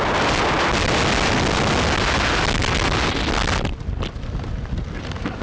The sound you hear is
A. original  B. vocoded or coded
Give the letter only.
A